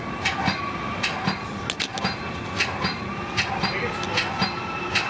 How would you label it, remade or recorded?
recorded